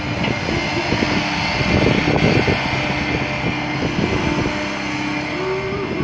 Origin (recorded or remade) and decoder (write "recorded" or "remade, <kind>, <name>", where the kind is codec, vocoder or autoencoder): recorded